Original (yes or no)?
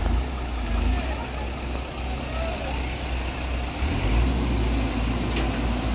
yes